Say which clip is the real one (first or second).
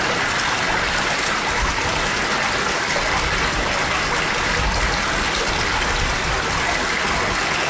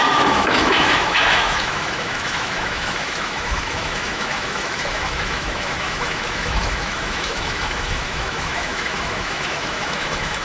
first